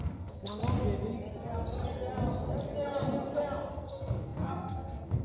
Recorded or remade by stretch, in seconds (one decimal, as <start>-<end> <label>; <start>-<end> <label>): 0.0-0.6 remade; 0.6-3.7 recorded; 3.7-5.2 remade

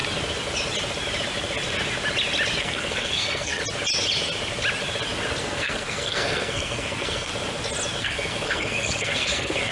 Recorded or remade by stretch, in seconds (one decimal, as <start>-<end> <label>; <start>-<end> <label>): 0.0-2.6 recorded; 2.6-3.6 remade; 3.6-5.4 recorded; 5.4-7.3 remade; 7.3-8.0 recorded; 8.0-9.7 remade